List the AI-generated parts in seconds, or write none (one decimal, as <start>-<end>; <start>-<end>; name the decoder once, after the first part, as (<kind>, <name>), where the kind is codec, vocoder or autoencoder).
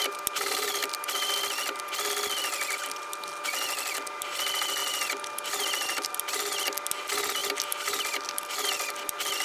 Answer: none